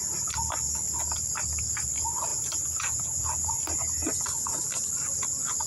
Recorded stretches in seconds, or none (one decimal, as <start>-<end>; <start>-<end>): 0.0-2.3; 3.5-5.7